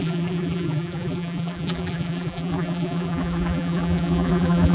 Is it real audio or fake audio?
fake